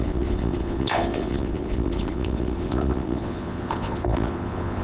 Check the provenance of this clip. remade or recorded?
remade